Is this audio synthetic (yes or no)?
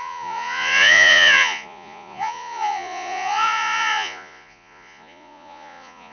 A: yes